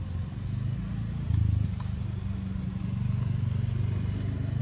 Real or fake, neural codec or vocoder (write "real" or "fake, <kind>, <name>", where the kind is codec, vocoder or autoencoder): real